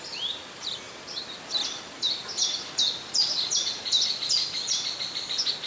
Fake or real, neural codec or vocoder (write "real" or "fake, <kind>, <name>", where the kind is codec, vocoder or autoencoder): real